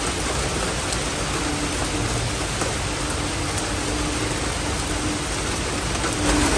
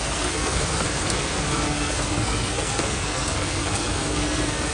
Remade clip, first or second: second